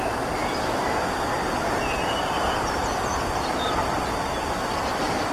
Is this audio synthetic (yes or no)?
no